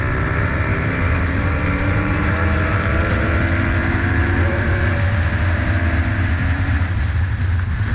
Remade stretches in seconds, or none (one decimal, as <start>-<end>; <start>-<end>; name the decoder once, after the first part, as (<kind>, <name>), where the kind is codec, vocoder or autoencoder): 0.7-3.4 (vocoder, BigVGAN v2); 3.8-5.0